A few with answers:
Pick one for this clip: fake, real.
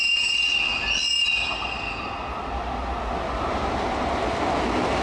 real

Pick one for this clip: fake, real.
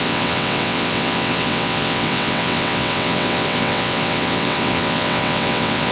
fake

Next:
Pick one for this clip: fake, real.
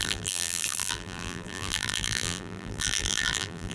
fake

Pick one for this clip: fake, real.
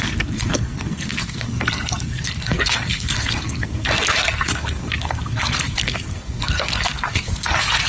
fake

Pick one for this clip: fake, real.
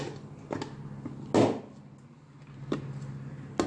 real